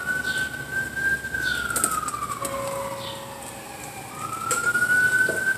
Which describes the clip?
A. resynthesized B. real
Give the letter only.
B